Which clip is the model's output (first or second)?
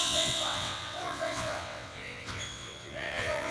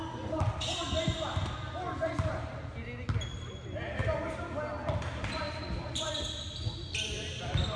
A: first